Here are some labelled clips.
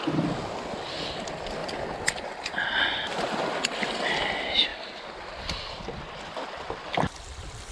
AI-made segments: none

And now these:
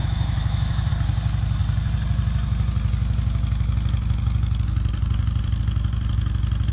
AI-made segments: 0.0-0.9 (autoencoder, DAC-VAE)

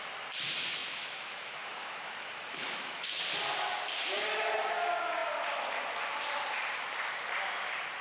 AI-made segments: 0.8-3.2 (autoencoder, DAC-VAE)

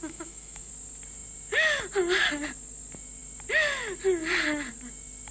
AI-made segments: 0.0-0.7 (autoencoder, DAC-VAE)

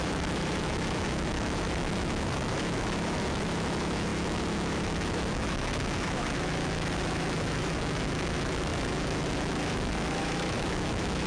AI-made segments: 0.0-11.3 (autoencoder, DAC-VAE)